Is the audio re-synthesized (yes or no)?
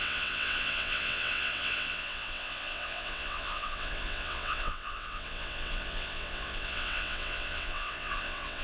yes